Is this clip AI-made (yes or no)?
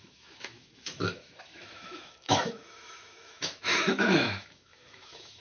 yes